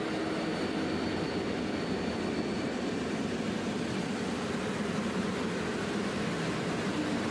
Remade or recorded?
recorded